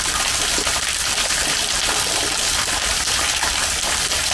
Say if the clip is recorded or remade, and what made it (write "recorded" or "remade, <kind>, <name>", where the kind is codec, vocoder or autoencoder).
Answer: recorded